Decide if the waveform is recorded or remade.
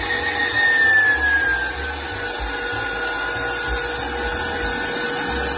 recorded